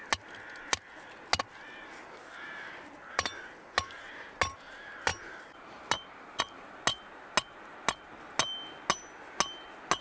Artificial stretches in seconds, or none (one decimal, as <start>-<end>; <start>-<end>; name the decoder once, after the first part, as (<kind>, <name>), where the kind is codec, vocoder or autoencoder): none

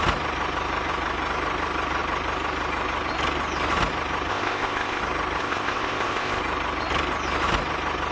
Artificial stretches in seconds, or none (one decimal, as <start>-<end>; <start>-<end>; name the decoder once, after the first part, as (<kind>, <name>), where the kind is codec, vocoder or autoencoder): 4.3-5.0 (codec, ZipCodec); 5.4-6.4

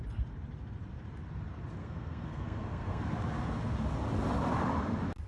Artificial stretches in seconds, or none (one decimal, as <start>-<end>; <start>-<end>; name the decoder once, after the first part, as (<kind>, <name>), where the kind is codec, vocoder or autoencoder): 1.8-3.0 (codec, SNAC)

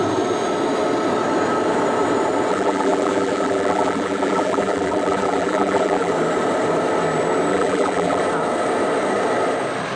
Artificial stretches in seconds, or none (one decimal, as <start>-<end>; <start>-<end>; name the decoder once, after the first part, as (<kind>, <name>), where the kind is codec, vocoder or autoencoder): 2.5-6.1 (vocoder, BigVGAN v2); 7.5-8.2

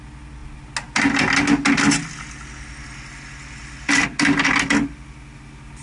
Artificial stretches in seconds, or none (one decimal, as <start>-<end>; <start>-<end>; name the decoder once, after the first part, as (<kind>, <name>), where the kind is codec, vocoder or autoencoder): none